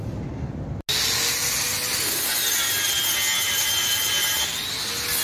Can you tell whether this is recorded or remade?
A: recorded